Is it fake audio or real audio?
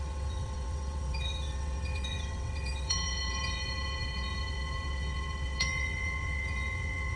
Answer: fake